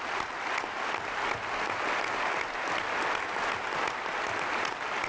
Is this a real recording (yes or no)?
yes